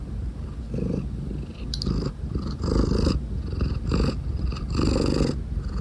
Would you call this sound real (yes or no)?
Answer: yes